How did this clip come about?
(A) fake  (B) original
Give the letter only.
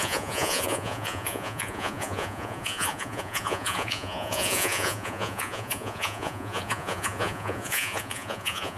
A